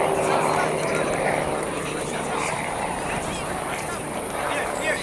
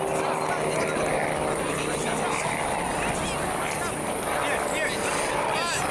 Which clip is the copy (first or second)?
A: first